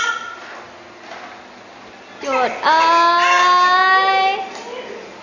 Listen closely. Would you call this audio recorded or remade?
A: recorded